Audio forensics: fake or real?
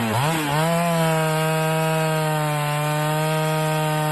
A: real